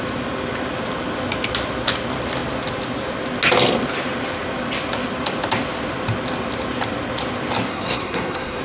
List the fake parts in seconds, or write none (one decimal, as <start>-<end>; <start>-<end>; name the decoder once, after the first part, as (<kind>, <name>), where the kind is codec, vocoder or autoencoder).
7.7-8.6 (codec, SNAC)